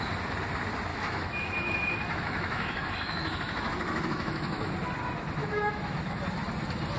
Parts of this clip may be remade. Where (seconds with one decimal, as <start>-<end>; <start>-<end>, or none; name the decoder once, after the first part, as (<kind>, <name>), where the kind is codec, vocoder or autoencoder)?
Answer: 0.9-4.7 (autoencoder, DAC-VAE); 5.4-6.2